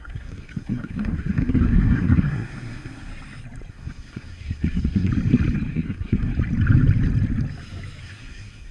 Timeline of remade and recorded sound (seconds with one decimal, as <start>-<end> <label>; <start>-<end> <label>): 0.0-3.1 remade; 3.1-3.7 recorded; 3.7-5.1 remade; 5.1-5.7 recorded; 5.7-6.3 remade; 6.3-8.0 recorded; 8.0-8.7 remade